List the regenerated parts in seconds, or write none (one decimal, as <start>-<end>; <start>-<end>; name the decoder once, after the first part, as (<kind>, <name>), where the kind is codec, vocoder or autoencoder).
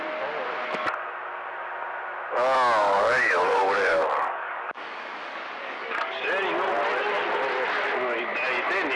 2.8-6.2 (codec, DAC)